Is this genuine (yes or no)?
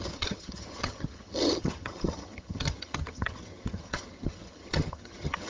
no